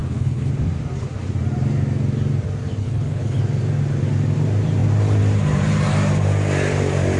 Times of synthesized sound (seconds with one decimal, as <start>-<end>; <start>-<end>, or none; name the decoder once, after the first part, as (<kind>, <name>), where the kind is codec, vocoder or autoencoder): 0.0-0.5 (codec, HILCodec); 2.8-3.4